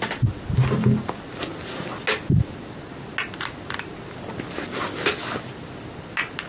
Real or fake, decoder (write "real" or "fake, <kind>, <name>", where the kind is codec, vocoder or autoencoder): real